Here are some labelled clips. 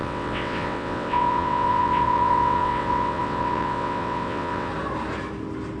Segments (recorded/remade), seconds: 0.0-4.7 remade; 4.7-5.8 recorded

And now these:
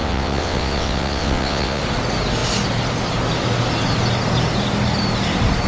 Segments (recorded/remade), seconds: 0.0-1.8 remade; 1.8-5.7 recorded